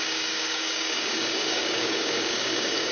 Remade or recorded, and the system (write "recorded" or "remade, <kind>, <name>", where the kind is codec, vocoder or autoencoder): remade, codec, DAC